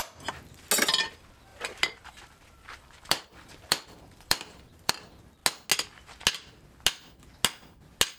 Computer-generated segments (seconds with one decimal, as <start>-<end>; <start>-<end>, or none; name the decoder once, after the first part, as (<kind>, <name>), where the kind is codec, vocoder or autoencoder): 1.5-4.9 (vocoder, BigVGAN v2)